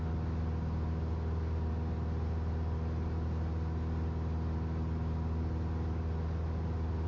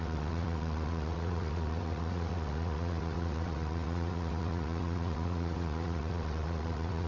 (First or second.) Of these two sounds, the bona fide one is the first